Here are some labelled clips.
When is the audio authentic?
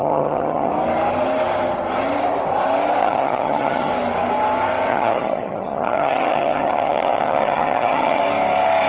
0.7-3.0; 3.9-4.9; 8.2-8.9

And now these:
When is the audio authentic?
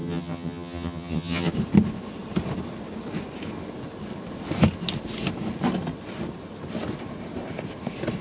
1.5-8.2